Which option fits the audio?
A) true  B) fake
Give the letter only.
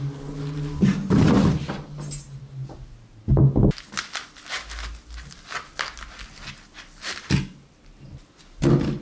A